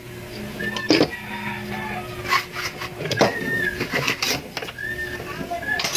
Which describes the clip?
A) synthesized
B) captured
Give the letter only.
B